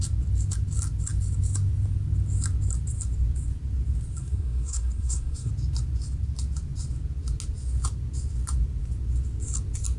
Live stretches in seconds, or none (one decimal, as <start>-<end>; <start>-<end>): 0.0-4.2; 5.5-10.0